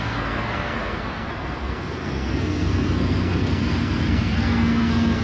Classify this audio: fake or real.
fake